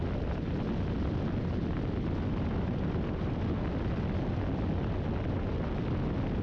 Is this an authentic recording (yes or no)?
yes